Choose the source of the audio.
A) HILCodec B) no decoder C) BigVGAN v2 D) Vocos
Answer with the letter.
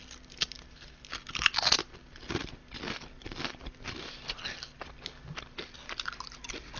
B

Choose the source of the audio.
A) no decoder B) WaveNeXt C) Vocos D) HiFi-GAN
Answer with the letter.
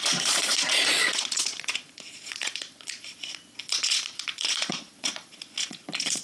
C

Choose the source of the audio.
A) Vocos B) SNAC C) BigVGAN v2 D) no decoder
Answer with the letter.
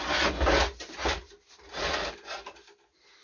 D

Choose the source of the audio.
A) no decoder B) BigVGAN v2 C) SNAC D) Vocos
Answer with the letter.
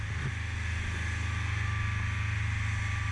A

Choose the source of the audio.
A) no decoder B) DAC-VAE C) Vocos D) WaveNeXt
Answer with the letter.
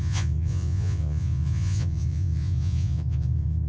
C